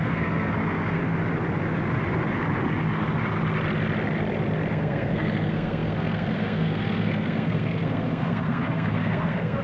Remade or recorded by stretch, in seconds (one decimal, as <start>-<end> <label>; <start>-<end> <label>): 0.0-1.0 remade; 1.0-4.7 recorded; 4.7-9.6 remade